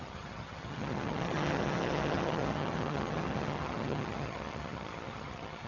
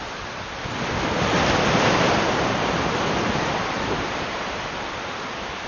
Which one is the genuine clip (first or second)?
second